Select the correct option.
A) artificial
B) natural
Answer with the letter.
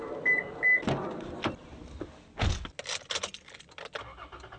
B